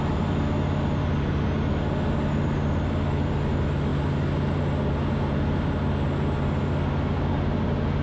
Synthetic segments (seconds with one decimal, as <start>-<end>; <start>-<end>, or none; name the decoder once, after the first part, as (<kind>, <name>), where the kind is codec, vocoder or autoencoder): none